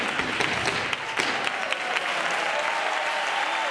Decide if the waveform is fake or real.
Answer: real